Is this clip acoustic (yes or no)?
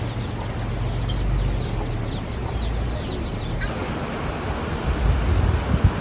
yes